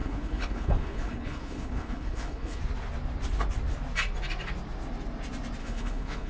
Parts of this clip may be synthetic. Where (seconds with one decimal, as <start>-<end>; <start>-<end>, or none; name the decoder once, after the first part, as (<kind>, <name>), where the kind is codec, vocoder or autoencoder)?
0.0-2.6 (codec, HILCodec); 5.6-6.3